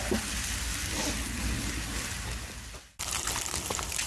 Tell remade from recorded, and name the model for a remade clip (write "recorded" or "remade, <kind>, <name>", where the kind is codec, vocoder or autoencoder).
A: recorded